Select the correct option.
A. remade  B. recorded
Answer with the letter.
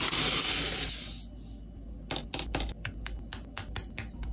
B